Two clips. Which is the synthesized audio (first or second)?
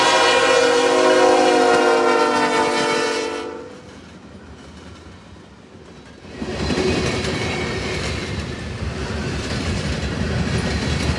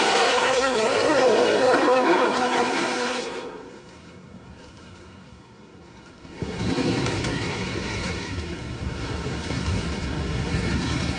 second